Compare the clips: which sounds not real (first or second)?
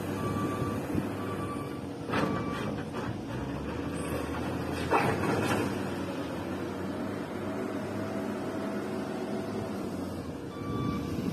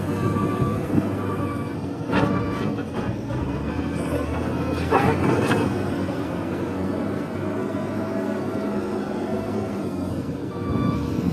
second